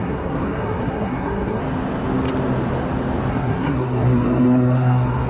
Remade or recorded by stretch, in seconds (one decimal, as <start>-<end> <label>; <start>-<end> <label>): 0.0-1.6 remade; 1.6-3.3 recorded; 3.3-5.3 remade